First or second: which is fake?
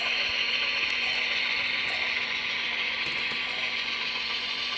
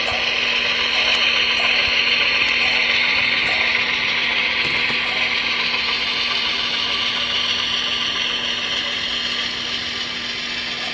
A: first